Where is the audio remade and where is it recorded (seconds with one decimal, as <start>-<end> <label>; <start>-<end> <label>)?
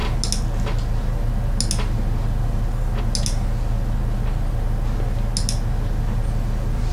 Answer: 0.0-6.9 recorded